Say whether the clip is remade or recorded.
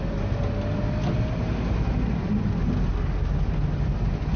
recorded